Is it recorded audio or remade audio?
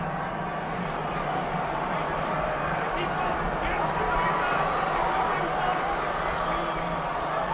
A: recorded